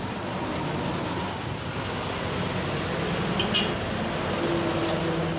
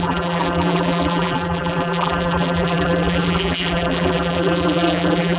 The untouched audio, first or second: first